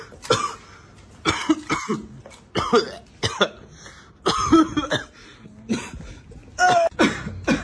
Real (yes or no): yes